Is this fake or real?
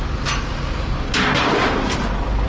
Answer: real